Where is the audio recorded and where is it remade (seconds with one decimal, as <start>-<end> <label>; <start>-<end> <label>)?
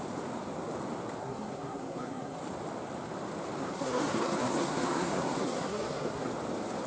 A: 0.0-1.2 recorded; 1.2-2.4 remade; 2.4-3.7 recorded; 3.7-6.3 remade; 6.3-6.9 recorded